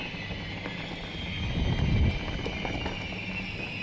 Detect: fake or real real